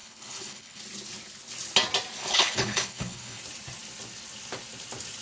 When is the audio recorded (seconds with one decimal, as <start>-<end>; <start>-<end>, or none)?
0.8-2.2; 3.4-5.2